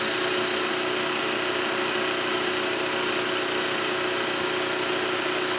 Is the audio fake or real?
real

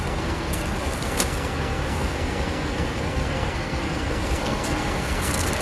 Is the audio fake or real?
fake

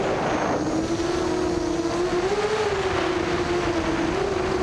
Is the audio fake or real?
real